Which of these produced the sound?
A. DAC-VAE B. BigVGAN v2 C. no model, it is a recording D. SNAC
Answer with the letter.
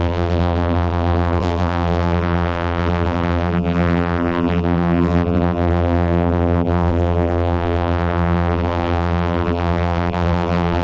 B